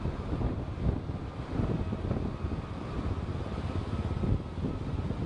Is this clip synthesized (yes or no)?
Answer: no